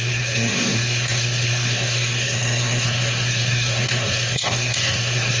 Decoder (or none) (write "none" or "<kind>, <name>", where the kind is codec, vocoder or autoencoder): codec, SNAC